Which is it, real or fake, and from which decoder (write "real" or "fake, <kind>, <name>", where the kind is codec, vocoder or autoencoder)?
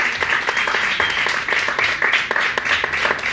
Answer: real